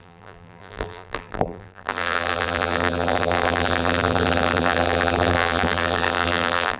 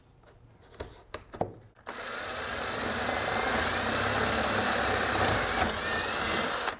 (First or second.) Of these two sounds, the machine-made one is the first